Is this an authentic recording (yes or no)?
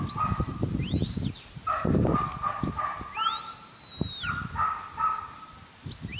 yes